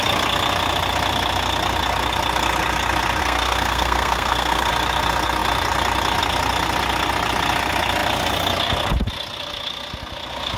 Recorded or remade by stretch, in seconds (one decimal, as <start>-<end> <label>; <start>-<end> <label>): 0.0-3.2 recorded; 3.2-4.7 remade; 4.7-10.6 recorded